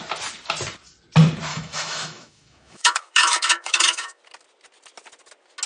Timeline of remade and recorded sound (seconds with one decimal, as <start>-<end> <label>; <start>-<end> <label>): 0.0-1.5 recorded; 1.5-4.2 remade; 4.2-5.7 recorded